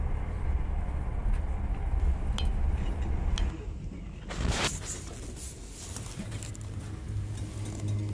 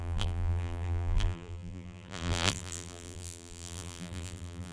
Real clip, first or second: first